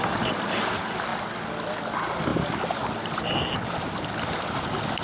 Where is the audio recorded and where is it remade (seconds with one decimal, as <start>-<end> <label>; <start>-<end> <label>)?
0.0-5.0 recorded